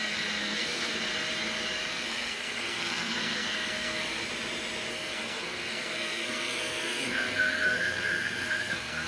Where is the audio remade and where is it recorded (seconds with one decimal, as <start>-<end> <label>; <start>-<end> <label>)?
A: 0.0-1.1 remade; 1.1-1.9 recorded; 1.9-4.2 remade; 4.2-4.9 recorded; 4.9-9.1 remade